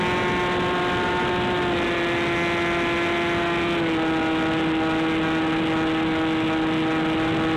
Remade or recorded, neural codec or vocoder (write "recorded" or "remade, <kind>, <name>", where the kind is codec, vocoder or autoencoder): recorded